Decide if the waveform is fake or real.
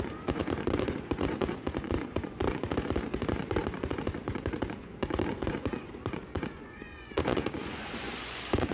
fake